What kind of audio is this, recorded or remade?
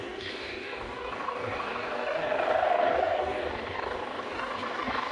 remade